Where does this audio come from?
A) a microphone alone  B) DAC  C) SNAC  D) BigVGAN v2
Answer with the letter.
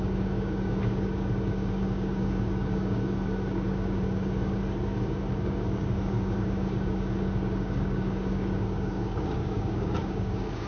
B